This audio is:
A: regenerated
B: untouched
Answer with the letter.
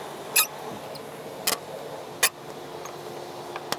B